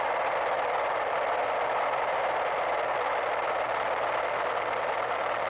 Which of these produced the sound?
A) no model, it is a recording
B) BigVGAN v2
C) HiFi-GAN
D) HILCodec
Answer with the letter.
A